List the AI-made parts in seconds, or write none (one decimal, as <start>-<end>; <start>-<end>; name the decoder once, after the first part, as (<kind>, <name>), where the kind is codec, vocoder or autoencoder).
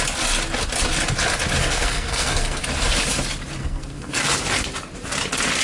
1.6-2.6 (codec, SNAC); 3.6-4.2